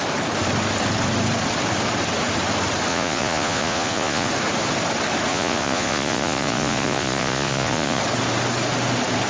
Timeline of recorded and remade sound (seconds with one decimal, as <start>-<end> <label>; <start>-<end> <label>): 0.0-2.9 recorded; 2.9-4.3 remade; 4.3-5.3 recorded; 5.3-8.0 remade; 8.0-9.3 recorded